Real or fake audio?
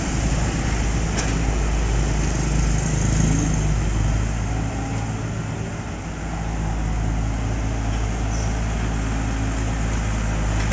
real